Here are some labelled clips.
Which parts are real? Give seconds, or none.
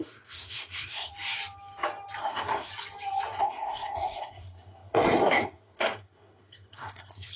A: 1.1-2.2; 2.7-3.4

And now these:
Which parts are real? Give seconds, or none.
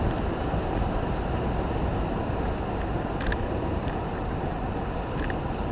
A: 0.0-0.4; 1.1-1.9; 4.1-5.7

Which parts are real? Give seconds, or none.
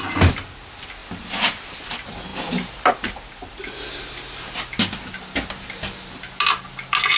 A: 0.0-7.2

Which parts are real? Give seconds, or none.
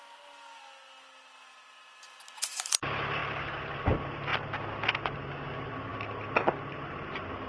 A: 0.0-7.5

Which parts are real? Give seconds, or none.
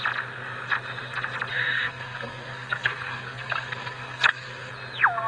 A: 0.0-1.5; 4.7-5.3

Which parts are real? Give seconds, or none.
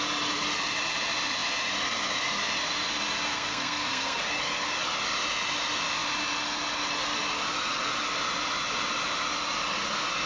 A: 0.0-3.3; 4.2-10.3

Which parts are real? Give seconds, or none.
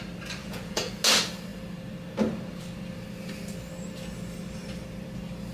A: 0.0-0.4; 0.9-5.5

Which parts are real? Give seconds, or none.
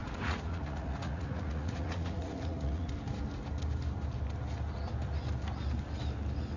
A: 2.9-6.6